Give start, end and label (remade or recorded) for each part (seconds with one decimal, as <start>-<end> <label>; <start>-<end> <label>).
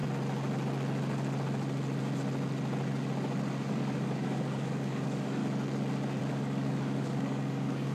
0.0-3.7 recorded; 3.7-5.4 remade; 5.4-6.2 recorded; 6.2-7.9 remade